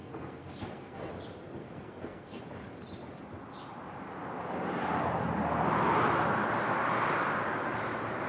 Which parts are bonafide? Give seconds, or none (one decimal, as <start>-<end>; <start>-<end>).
1.1-1.6; 2.4-8.3